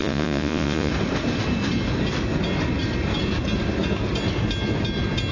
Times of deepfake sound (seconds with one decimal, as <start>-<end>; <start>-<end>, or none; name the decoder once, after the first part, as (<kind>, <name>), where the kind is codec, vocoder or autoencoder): 0.0-0.9 (vocoder, Vocos)

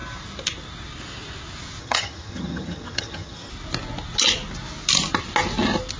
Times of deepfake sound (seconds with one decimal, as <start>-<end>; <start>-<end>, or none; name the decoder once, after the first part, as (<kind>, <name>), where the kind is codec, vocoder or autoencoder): 1.8-3.5 (vocoder, HiFi-GAN)

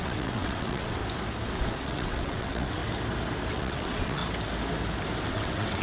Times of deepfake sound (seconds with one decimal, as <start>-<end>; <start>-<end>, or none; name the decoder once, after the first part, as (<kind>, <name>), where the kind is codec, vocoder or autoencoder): 0.0-1.0 (vocoder, WaveNeXt); 1.8-2.8; 3.5-4.2; 5.3-5.8

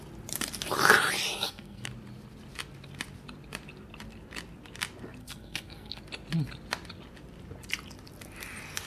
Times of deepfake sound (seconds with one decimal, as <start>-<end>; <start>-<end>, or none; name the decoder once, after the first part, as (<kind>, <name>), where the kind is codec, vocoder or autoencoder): 1.3-1.9 (codec, SNAC); 5.2-6.0

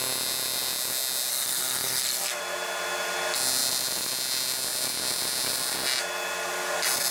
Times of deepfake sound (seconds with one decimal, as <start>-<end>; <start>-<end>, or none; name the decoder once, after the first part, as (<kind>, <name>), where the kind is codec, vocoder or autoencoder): 1.3-2.4 (codec, SNAC)

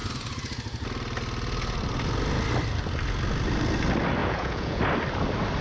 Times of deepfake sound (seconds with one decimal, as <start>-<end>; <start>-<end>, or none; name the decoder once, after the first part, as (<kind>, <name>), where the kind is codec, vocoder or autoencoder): 4.2-4.8 (vocoder, Vocos)

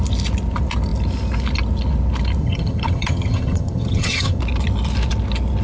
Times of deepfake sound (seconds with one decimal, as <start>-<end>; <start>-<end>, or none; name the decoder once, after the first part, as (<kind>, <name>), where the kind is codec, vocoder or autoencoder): 2.4-4.4 (vocoder, HiFi-GAN)

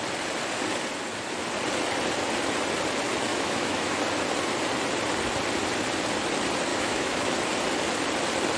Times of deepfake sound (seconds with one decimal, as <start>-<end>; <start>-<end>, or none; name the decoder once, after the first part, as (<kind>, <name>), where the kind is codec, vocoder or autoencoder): 3.3-4.0 (autoencoder, DAC-VAE); 6.7-7.3